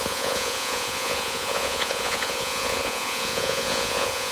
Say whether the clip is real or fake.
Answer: fake